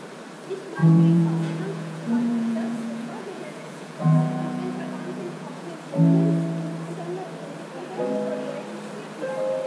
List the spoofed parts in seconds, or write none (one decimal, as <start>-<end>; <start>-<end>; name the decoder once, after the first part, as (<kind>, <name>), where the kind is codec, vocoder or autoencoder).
0.8-5.7 (vocoder, Vocos)